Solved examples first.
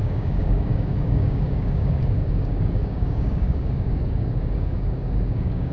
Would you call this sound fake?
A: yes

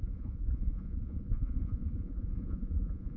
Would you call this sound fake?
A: yes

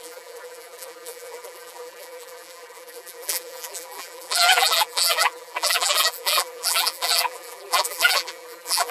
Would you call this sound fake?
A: yes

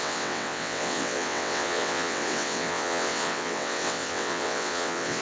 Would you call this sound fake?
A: yes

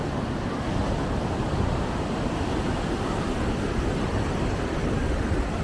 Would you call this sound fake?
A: no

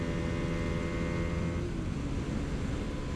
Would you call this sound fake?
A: no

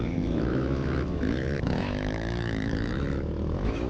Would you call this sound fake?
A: yes